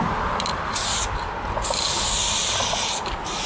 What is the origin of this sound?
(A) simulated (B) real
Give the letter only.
B